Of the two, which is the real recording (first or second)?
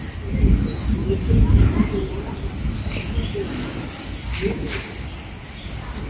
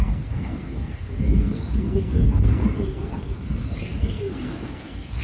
first